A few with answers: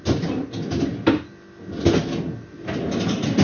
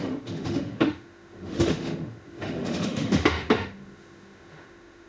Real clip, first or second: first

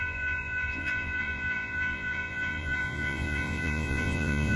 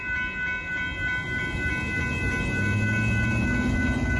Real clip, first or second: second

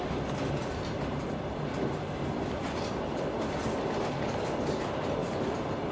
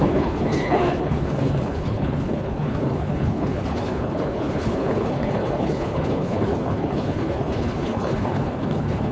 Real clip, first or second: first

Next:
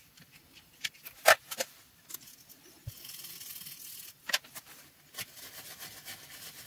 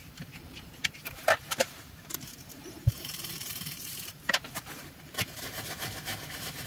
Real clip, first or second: first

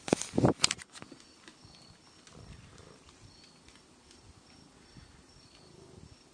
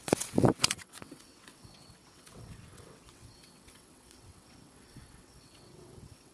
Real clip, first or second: first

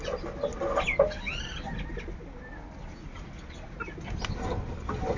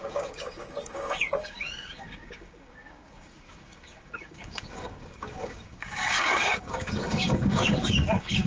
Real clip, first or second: first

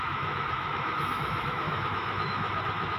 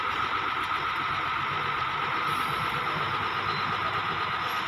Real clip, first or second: second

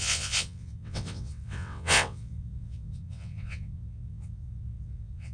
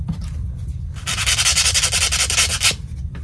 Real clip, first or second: second